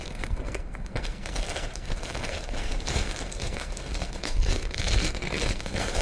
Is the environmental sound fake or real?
fake